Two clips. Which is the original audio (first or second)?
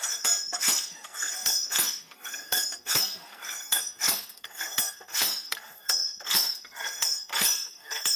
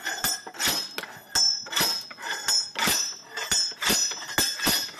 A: second